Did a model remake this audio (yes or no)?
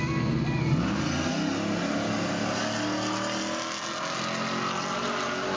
no